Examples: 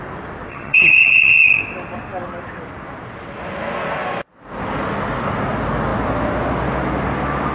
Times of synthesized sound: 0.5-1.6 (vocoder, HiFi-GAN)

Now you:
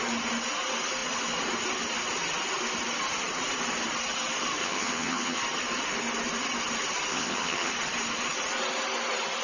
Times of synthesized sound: 4.6-5.4 (vocoder, HiFi-GAN); 7.1-7.7

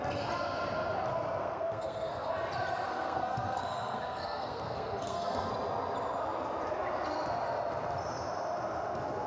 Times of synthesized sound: 1.4-2.3 (codec, SNAC); 2.9-5.5

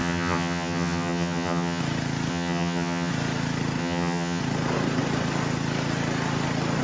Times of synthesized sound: 0.0-1.8 (vocoder, HiFi-GAN); 2.3-3.1; 3.8-4.4